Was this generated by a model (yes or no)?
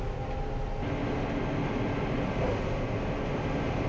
no